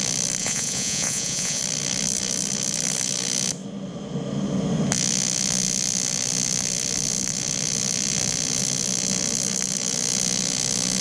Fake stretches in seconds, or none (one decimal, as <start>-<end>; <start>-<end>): 0.4-1.6